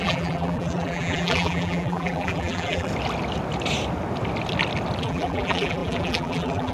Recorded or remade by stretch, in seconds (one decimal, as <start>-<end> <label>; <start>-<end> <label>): 0.0-2.9 remade; 2.9-5.0 recorded; 5.0-6.7 remade